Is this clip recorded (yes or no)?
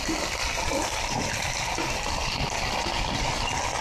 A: yes